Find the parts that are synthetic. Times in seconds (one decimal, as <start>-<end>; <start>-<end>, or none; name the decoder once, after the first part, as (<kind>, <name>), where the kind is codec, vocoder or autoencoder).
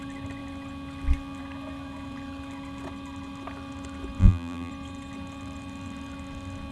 4.2-4.7 (vocoder, BigVGAN v2)